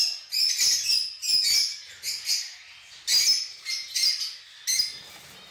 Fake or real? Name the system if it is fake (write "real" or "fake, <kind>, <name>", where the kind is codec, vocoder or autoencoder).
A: real